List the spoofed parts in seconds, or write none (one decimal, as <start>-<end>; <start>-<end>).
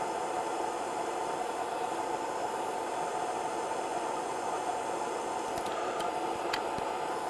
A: 3.9-4.8